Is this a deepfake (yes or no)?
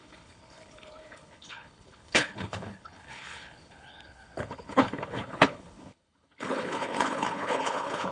yes